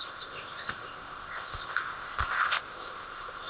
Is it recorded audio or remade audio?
remade